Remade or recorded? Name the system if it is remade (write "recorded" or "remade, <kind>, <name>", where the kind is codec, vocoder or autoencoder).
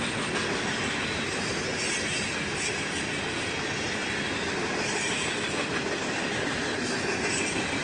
recorded